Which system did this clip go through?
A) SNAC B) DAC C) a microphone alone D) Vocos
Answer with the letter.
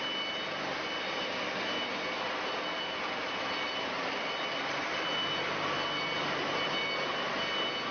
C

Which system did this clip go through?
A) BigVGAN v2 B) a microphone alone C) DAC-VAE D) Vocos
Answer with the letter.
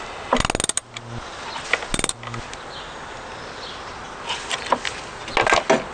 B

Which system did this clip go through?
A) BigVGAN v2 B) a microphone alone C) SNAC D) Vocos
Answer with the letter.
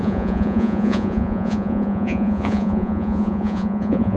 D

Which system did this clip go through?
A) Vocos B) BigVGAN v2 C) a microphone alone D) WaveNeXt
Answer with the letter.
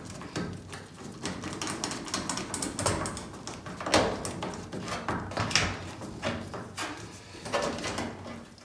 C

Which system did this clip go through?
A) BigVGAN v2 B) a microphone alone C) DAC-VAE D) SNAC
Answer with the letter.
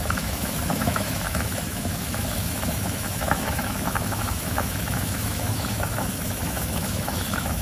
C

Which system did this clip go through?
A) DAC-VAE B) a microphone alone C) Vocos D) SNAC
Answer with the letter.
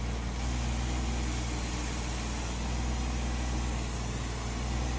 B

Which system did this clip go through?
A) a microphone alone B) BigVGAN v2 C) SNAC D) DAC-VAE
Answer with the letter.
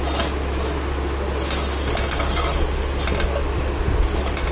A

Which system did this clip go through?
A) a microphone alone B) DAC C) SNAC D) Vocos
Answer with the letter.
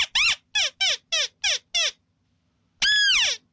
A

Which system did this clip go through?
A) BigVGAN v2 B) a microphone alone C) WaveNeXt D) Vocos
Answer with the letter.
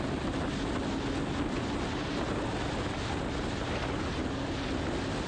B